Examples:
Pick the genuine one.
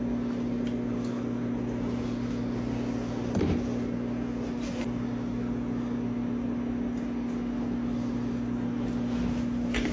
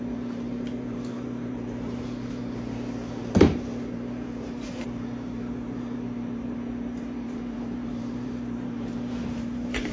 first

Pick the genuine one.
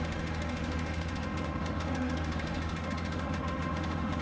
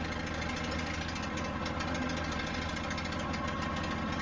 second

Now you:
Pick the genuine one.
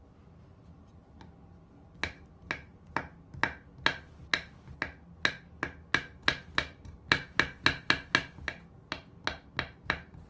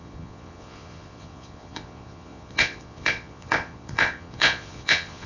first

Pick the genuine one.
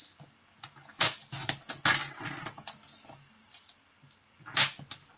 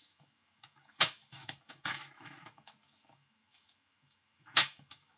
first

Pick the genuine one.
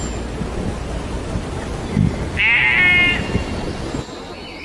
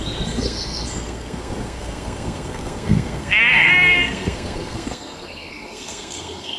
first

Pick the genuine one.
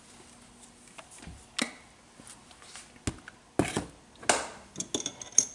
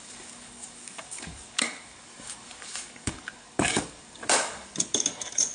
first